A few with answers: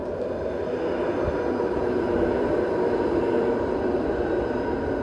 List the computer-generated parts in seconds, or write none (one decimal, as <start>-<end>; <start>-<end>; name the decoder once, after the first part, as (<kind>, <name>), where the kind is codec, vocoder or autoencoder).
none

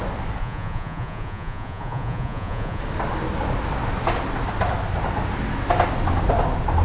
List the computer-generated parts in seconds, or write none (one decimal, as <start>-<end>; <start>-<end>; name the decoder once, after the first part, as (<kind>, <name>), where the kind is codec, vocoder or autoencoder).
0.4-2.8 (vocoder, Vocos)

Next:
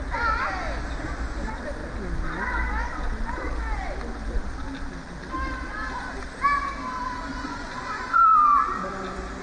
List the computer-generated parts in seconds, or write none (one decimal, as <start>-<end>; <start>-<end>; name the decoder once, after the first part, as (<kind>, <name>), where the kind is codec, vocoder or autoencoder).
7.3-8.2 (vocoder, Vocos)